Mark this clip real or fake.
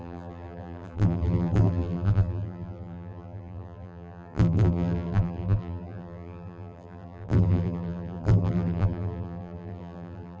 fake